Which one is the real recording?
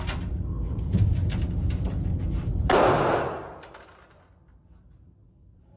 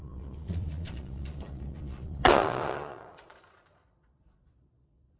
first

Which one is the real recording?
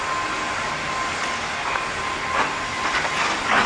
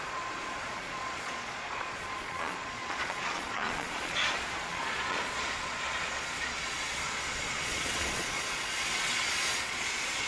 first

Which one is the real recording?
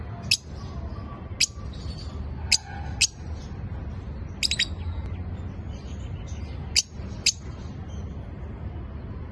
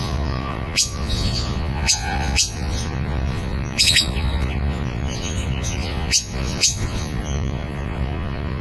first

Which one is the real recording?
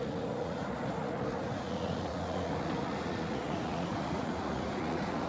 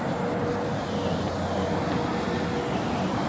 second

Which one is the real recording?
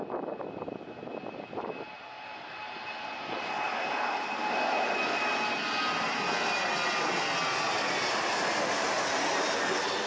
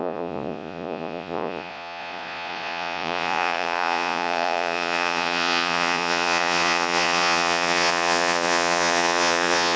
first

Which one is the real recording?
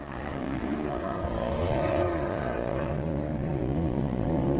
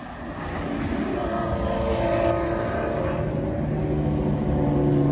second